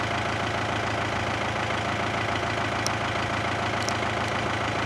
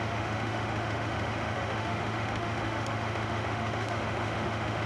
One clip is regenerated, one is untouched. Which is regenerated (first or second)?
second